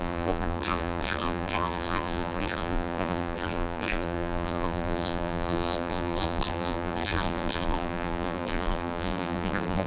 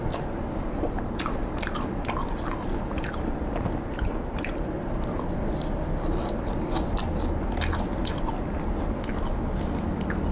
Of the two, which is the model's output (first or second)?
first